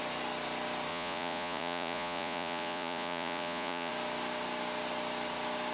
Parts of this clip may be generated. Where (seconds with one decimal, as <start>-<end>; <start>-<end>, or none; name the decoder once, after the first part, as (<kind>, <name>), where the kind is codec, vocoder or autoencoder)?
0.9-3.9 (vocoder, Vocos)